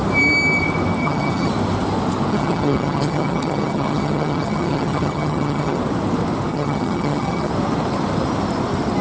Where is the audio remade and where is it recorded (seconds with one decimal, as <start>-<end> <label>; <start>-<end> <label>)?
0.0-1.0 recorded; 1.0-1.5 remade; 1.5-2.3 recorded; 2.3-5.8 remade; 5.8-6.5 recorded; 6.5-7.5 remade; 7.5-9.0 recorded